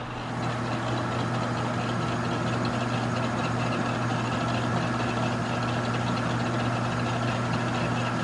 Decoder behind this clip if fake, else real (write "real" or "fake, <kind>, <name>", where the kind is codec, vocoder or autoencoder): real